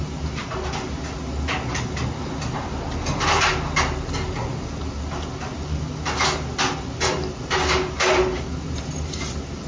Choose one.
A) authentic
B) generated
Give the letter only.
A